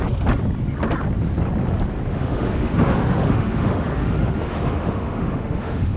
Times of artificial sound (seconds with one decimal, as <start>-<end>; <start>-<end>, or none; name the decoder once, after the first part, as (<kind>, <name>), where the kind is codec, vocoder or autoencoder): 2.1-6.0 (autoencoder, DAC-VAE)